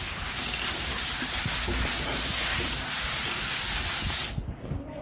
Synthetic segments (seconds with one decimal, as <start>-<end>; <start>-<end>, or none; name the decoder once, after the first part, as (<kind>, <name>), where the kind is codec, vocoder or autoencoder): 2.5-4.0 (vocoder, BigVGAN v2)